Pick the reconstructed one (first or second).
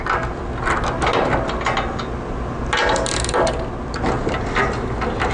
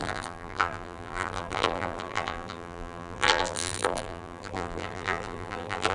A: second